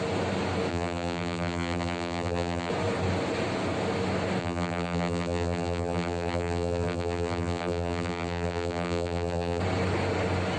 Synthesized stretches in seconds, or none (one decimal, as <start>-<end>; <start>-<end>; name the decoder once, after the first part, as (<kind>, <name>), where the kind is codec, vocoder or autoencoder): 0.7-2.7 (vocoder, BigVGAN v2); 4.4-9.6